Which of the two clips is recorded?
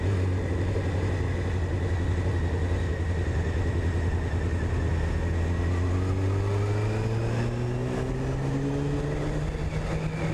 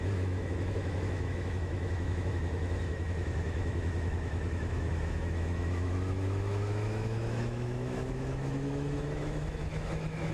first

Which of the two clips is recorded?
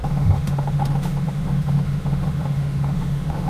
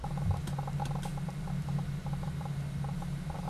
second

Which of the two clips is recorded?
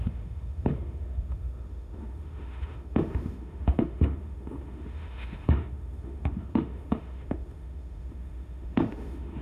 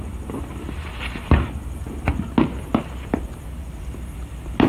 second